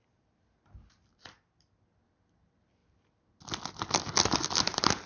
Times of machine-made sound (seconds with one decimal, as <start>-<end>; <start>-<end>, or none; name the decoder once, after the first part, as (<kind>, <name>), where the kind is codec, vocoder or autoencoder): none